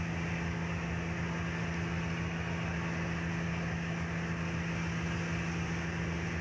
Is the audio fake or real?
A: real